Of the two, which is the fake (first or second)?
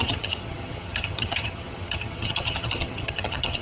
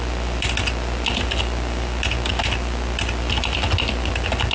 first